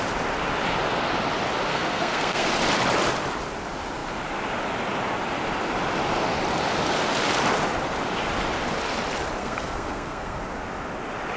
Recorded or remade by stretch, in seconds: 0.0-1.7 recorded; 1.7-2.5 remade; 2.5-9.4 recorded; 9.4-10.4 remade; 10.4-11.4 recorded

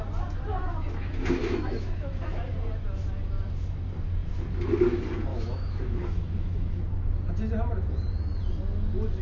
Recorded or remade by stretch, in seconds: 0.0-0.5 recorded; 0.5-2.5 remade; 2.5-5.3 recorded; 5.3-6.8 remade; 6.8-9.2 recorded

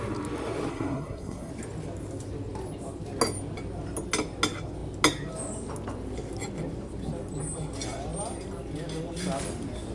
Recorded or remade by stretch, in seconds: 0.0-0.7 recorded; 0.7-1.5 remade; 1.5-9.9 recorded